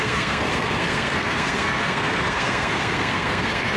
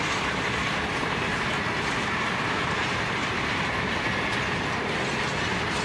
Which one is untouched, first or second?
second